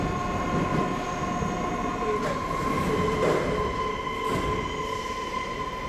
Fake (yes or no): no